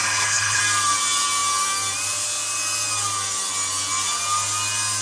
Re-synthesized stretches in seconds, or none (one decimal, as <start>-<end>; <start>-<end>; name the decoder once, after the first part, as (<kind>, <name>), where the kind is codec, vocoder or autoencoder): 0.0-0.6 (codec, HILCodec)